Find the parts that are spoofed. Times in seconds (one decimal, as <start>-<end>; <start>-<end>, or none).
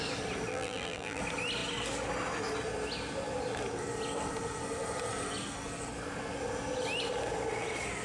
0.5-1.2